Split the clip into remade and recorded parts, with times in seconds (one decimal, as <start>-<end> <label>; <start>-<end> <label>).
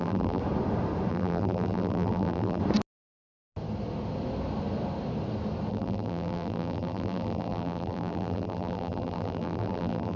0.0-0.4 remade; 0.4-1.1 recorded; 1.1-2.6 remade; 2.6-5.7 recorded; 5.7-10.2 remade